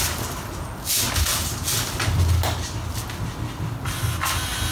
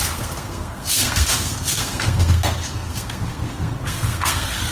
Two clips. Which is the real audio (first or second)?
first